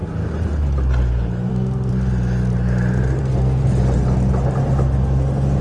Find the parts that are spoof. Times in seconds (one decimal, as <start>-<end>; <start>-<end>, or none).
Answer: 1.5-1.9; 3.2-3.6

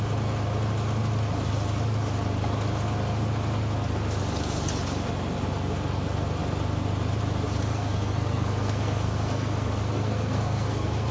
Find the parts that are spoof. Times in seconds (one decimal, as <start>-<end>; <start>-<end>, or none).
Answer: 7.7-11.1

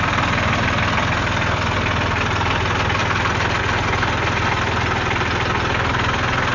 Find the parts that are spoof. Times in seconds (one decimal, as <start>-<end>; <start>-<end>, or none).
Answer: none

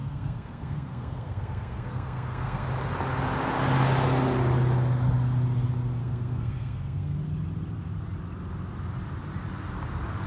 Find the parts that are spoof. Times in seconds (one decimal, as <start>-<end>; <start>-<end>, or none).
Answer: 0.0-2.7; 6.0-7.2

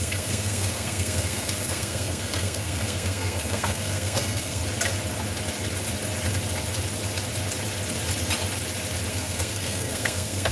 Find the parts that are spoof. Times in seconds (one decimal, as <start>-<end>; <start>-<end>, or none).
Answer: 0.0-4.6; 9.1-10.5